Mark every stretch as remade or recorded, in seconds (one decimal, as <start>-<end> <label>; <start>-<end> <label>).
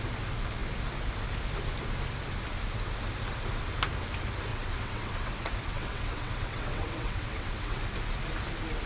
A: 0.0-4.5 recorded; 4.5-7.8 remade; 7.8-8.9 recorded